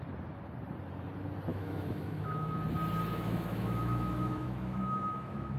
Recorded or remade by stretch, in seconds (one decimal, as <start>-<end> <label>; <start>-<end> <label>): 0.0-1.5 recorded; 1.5-2.6 remade; 2.6-3.1 recorded; 3.1-5.6 remade